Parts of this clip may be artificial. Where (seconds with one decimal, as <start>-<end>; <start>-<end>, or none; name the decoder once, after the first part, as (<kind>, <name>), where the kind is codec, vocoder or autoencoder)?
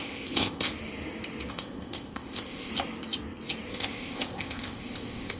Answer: 0.0-0.7 (codec, ZipCodec); 1.5-2.7; 3.7-5.4